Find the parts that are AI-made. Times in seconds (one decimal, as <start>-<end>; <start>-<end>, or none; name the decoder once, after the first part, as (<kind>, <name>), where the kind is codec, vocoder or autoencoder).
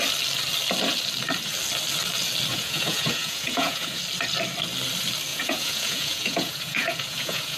2.5-4.0 (vocoder, Vocos); 5.3-7.6